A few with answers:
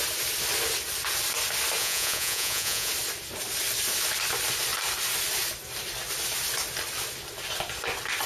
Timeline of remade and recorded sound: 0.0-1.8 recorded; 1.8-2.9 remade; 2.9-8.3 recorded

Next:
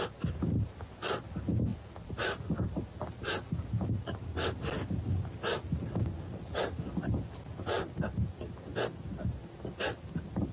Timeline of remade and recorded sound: 0.0-10.5 recorded

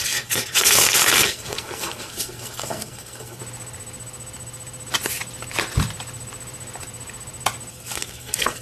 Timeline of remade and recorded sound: 0.0-3.4 remade; 3.4-7.7 recorded; 7.7-8.6 remade